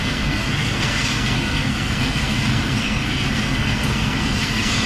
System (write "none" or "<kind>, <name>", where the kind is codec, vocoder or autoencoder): codec, SNAC